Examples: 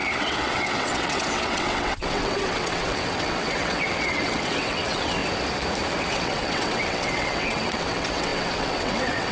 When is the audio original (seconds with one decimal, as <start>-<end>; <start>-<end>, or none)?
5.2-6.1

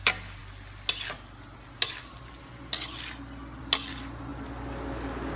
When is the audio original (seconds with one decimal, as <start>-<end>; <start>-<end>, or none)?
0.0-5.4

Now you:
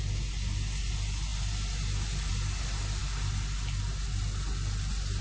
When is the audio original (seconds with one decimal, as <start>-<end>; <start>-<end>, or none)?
0.0-5.2

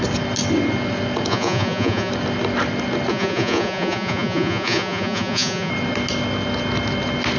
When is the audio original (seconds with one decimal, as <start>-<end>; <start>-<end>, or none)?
0.0-1.3; 2.1-3.1; 5.7-7.4

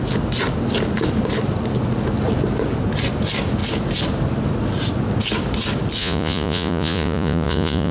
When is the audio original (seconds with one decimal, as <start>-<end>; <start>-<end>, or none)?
0.0-6.0

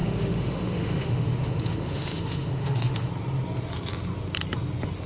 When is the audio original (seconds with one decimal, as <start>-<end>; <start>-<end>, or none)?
3.1-5.1

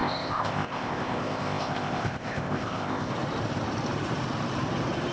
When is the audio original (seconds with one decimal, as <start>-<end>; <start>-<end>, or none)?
3.1-5.1

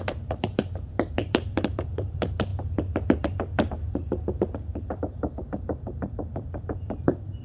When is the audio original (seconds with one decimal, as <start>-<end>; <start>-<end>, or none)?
2.5-5.0